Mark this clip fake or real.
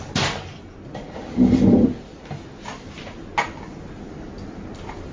real